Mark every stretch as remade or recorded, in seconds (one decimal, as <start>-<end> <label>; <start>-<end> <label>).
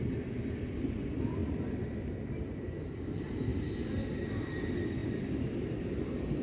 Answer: 0.0-3.5 remade; 3.5-4.3 recorded; 4.3-6.4 remade